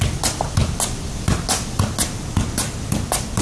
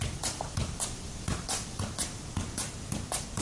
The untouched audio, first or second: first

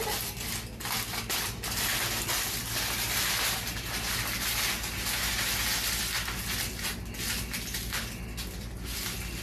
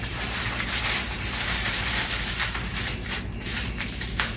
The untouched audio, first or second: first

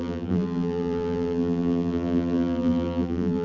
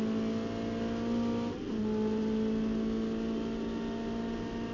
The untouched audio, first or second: second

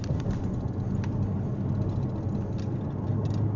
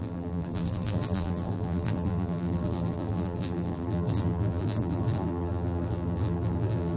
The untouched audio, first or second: first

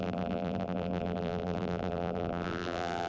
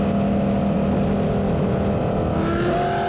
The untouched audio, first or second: second